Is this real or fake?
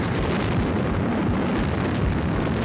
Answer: real